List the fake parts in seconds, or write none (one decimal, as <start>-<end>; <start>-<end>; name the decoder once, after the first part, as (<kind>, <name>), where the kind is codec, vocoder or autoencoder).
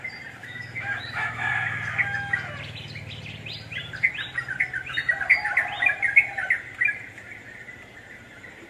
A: 0.4-1.5 (autoencoder, DAC-VAE)